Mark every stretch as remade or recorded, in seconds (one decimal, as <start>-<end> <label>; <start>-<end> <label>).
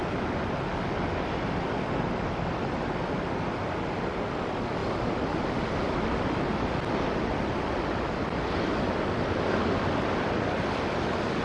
0.0-11.4 recorded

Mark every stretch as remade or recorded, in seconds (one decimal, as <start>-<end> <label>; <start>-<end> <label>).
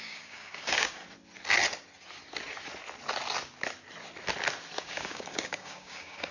0.0-1.0 remade; 1.0-4.8 recorded; 4.8-6.3 remade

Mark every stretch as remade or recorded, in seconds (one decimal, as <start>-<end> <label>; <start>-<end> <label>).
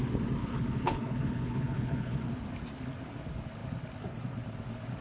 0.0-0.4 recorded; 0.4-2.2 remade; 2.2-5.0 recorded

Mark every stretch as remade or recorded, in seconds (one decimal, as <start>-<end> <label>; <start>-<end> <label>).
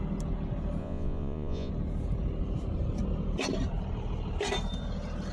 0.0-0.8 recorded; 0.8-1.7 remade; 1.7-5.3 recorded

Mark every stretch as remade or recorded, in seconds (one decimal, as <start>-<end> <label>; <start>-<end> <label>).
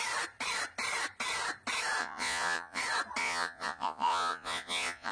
0.0-2.0 recorded; 2.0-2.8 remade; 2.8-3.2 recorded; 3.2-5.1 remade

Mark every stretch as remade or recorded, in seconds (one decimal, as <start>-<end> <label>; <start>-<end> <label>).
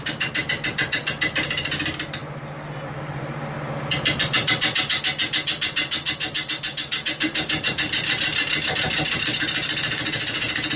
0.0-10.8 recorded